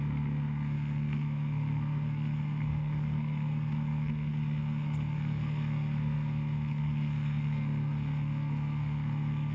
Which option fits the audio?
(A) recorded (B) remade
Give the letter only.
B